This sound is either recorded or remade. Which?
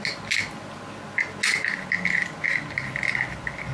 recorded